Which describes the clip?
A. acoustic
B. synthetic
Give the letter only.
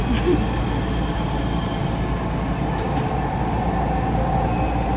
A